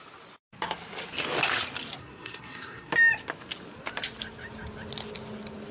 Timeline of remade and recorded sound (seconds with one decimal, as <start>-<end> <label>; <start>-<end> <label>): 0.0-2.0 recorded; 2.0-2.9 remade; 2.9-5.7 recorded